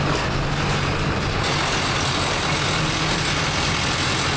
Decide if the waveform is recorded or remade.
recorded